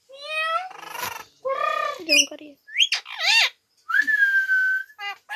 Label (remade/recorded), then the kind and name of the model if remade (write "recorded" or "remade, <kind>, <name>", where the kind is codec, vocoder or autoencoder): recorded